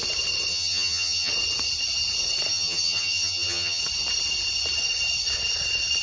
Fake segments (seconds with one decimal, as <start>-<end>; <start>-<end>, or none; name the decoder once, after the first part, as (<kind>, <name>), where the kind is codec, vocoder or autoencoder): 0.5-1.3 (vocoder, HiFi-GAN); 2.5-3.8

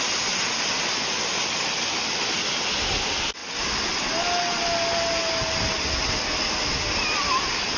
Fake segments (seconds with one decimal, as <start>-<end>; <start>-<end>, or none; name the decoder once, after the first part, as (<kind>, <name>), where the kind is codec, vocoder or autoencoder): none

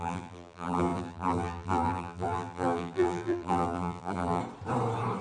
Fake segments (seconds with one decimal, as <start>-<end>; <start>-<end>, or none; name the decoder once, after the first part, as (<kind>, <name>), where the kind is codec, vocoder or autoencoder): 0.0-4.4 (vocoder, BigVGAN v2)

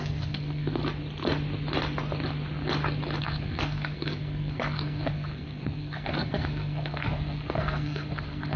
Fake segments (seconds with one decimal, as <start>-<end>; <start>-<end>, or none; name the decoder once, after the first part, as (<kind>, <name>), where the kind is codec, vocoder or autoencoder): 0.0-0.8 (codec, SNAC); 3.2-8.6

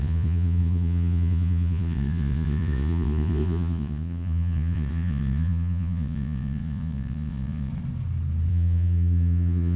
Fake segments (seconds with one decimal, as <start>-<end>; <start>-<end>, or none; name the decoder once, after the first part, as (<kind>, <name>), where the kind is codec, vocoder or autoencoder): 0.0-7.7 (vocoder, Vocos); 8.5-9.8